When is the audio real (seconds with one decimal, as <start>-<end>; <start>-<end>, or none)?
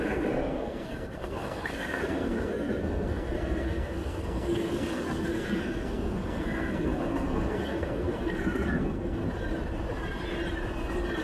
9.2-11.2